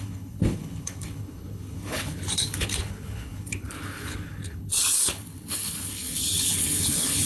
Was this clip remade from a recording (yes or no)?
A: yes